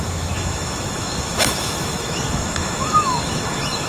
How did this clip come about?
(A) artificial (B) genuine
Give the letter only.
A